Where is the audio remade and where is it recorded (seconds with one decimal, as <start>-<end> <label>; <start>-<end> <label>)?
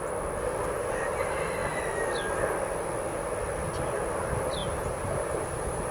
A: 0.0-4.6 recorded; 4.6-5.9 remade